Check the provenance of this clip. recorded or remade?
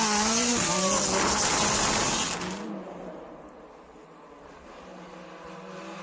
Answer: recorded